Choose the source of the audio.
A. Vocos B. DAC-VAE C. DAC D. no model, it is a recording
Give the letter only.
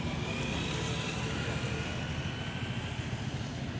D